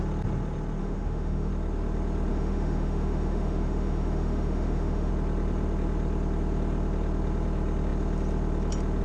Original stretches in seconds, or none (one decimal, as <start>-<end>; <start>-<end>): 0.0-0.8; 1.5-2.3; 5.1-9.0